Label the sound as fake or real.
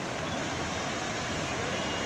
real